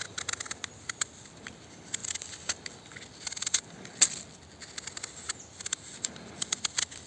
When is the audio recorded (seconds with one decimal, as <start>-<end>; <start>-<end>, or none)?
0.0-7.1